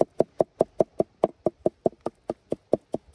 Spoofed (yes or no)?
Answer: no